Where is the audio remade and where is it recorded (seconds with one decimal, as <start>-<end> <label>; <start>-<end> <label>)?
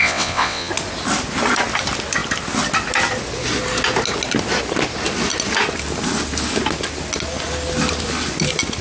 0.0-0.7 remade; 0.7-8.8 recorded